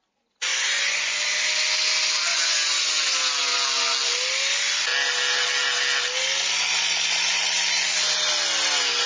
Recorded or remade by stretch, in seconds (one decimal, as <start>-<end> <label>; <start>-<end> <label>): 0.0-0.5 recorded; 0.5-1.2 remade; 1.2-2.3 recorded; 2.3-2.9 remade; 2.9-9.1 recorded